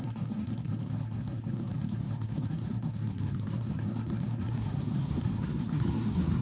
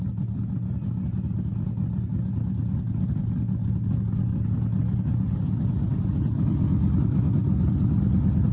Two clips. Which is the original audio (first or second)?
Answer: second